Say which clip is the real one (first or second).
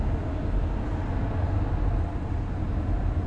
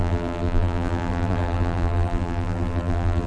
first